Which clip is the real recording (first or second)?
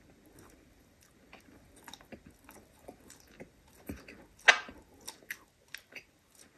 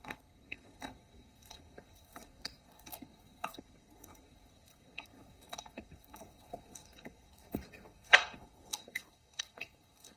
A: first